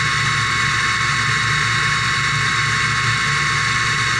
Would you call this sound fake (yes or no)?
no